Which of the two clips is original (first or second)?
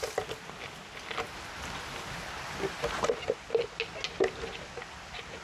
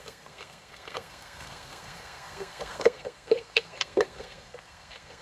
first